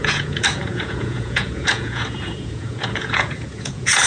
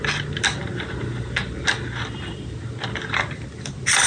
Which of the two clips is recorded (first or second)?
second